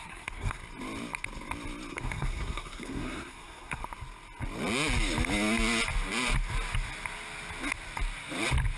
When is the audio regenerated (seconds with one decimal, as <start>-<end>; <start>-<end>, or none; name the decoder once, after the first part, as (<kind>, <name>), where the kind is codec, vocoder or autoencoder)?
0.0-0.6 (codec, SNAC); 1.9-3.8

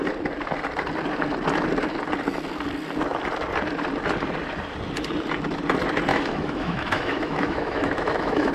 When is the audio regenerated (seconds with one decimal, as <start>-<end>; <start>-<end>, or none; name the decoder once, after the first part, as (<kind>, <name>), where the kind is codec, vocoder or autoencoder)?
6.1-8.5 (autoencoder, DAC-VAE)